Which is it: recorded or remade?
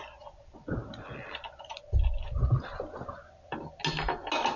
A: recorded